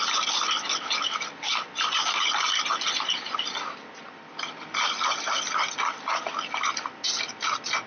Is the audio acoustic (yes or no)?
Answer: yes